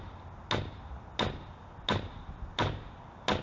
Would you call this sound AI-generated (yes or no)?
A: no